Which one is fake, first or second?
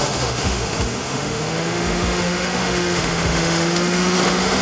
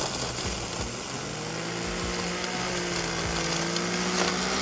first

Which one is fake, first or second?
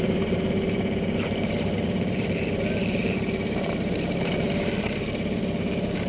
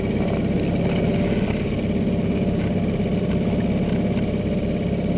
first